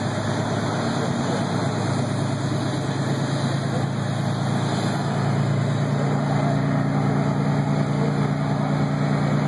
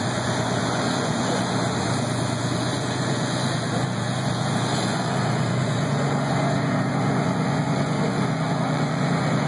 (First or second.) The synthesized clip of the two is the second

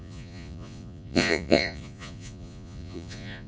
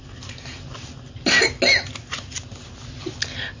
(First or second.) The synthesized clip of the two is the first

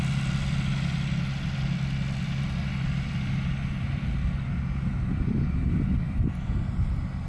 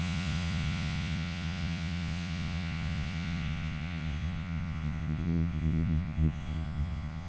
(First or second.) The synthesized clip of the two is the second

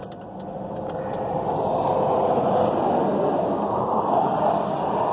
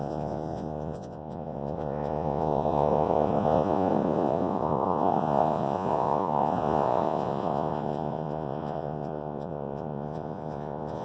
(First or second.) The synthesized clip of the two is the second